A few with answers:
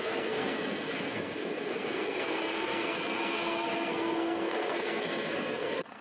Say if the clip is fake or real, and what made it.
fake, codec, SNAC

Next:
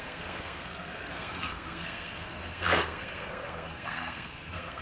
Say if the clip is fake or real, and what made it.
fake, codec, SNAC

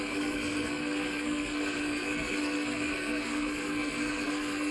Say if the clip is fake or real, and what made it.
fake, codec, SNAC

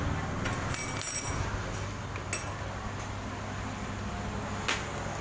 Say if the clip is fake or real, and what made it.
real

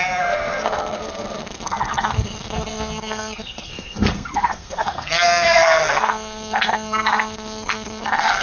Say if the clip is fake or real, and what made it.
fake, codec, SNAC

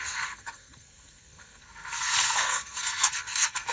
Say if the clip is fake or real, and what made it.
fake, codec, SNAC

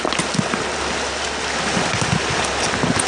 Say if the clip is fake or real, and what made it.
real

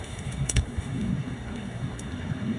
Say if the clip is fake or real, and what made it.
fake, codec, SNAC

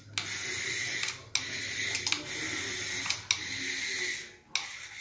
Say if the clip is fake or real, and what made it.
real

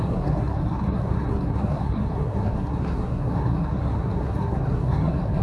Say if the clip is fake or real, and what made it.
fake, codec, SNAC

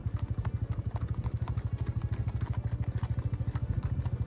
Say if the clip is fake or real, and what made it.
real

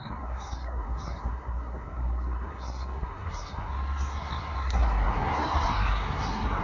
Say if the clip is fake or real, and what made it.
fake, codec, SNAC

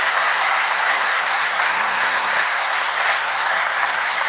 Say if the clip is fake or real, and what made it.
fake, codec, SNAC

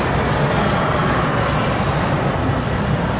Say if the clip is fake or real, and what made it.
real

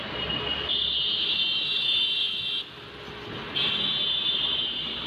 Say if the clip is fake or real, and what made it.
real